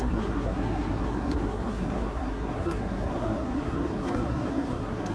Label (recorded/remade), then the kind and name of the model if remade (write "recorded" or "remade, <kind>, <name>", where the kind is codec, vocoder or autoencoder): remade, codec, SNAC